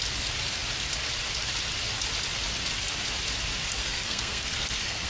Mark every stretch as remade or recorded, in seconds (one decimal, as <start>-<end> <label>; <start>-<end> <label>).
0.0-3.8 recorded; 3.8-5.1 remade